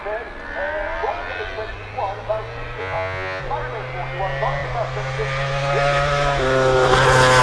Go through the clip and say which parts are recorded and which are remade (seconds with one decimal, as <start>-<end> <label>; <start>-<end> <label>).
0.0-2.8 recorded; 2.8-3.4 remade; 3.4-7.4 recorded